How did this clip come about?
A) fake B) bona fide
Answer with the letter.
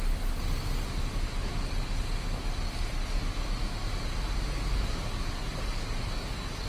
B